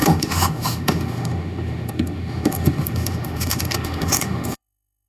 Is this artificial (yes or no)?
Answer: yes